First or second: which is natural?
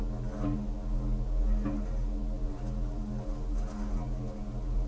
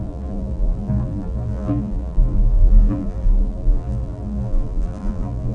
first